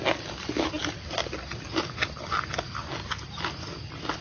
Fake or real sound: real